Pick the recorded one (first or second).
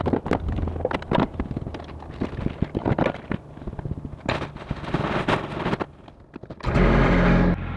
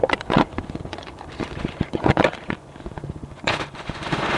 first